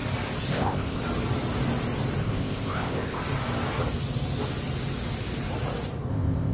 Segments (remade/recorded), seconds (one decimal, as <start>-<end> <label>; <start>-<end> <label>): 0.0-0.5 recorded; 0.5-1.0 remade; 1.0-2.2 recorded; 2.2-3.2 remade; 3.2-6.1 recorded; 6.1-6.5 remade